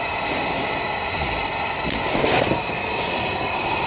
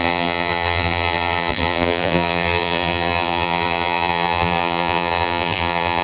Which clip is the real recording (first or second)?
first